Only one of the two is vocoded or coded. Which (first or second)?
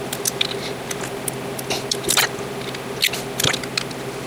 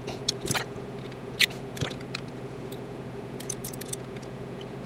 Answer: second